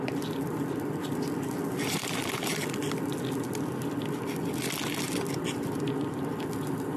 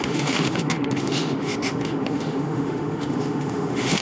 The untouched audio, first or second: first